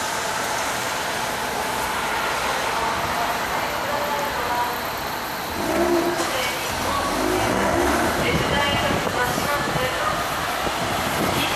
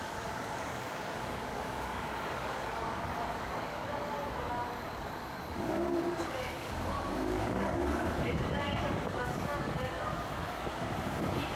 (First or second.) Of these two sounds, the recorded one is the first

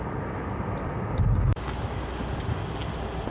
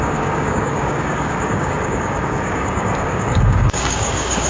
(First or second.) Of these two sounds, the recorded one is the first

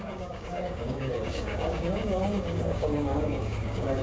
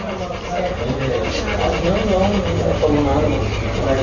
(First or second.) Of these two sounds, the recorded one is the second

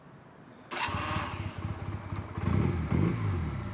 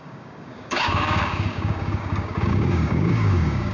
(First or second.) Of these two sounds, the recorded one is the first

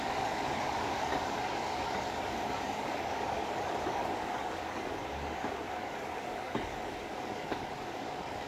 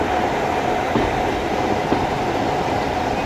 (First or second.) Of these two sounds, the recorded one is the second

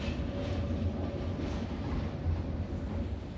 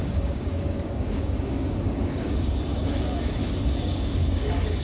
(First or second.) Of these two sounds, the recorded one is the first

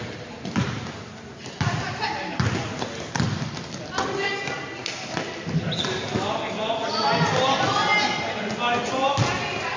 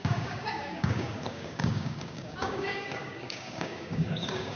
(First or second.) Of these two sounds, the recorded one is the first